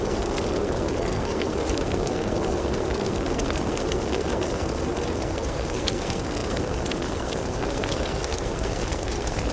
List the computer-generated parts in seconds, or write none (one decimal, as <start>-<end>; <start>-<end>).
0.0-9.5